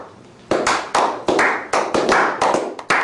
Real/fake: real